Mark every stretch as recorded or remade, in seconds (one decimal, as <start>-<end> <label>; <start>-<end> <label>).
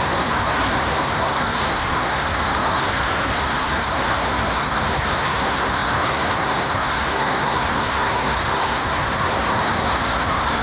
0.0-10.6 remade